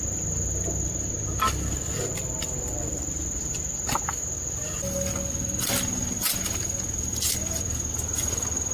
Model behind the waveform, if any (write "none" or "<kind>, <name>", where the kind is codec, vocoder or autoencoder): none